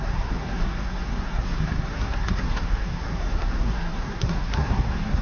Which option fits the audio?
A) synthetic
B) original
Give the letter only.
A